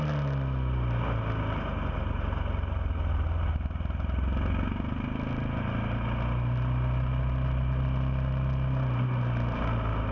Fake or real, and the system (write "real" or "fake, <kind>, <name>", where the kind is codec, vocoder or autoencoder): real